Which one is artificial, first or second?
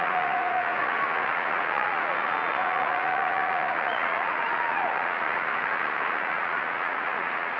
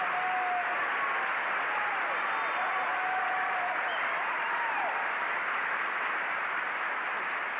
first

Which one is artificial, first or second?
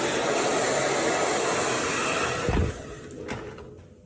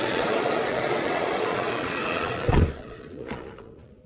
second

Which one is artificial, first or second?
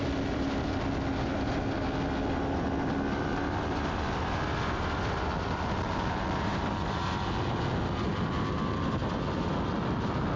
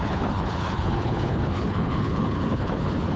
second